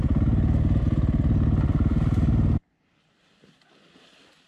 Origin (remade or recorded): recorded